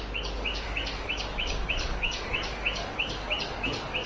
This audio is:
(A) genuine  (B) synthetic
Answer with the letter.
B